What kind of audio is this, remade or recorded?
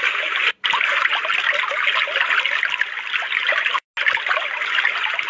recorded